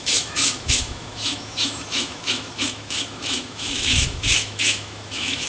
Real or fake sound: fake